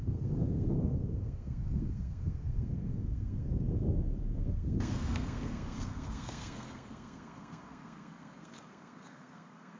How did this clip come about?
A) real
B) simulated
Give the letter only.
B